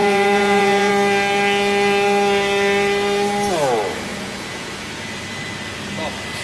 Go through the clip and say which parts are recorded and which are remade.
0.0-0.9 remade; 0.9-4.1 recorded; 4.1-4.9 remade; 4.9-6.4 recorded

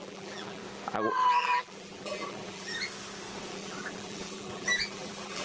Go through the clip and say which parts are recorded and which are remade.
0.0-0.6 remade; 0.6-1.3 recorded; 1.3-2.7 remade; 2.7-3.5 recorded; 3.5-5.4 remade